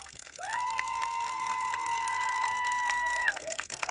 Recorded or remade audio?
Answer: remade